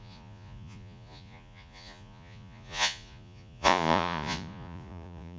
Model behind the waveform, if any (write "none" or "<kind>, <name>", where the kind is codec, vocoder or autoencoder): vocoder, Vocos